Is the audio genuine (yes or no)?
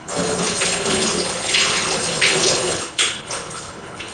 no